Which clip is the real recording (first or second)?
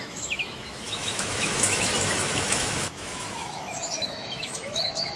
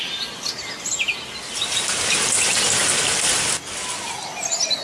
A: second